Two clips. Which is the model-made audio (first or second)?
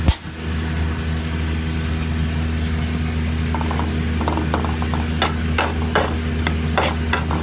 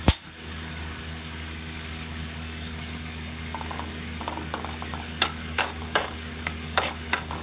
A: second